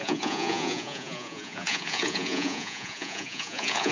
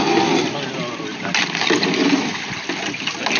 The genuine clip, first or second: second